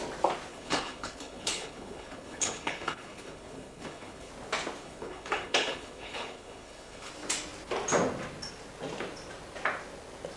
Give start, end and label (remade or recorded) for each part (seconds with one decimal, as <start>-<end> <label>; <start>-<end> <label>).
0.0-0.5 recorded; 0.5-4.3 remade; 4.3-4.8 recorded; 4.8-7.1 remade; 7.1-10.4 recorded